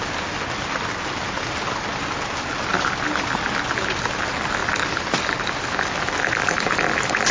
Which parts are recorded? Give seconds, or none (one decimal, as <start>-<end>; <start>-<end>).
0.0-7.3